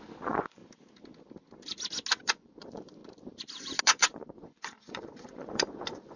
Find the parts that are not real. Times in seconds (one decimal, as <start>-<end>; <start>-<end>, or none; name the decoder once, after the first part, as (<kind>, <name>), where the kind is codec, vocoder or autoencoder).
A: 0.0-0.6 (vocoder, Vocos); 2.2-3.0; 3.8-6.2